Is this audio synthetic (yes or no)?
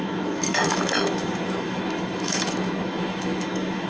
yes